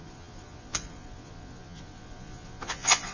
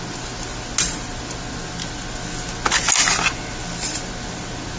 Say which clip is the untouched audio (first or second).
second